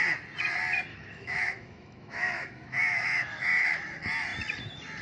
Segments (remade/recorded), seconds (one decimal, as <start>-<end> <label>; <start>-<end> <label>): 0.0-0.9 recorded; 0.9-3.9 remade; 3.9-5.0 recorded